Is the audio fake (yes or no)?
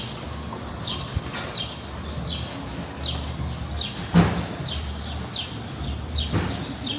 no